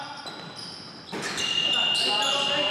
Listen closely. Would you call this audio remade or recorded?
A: recorded